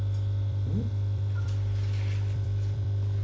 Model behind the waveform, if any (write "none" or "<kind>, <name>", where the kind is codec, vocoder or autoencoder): vocoder, BigVGAN v2